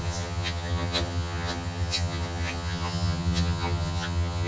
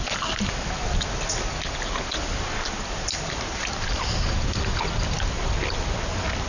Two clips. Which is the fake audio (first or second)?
first